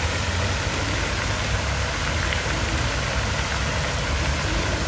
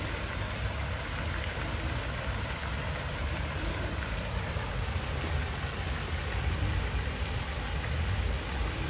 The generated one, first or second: second